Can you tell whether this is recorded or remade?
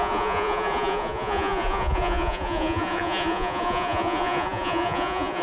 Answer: remade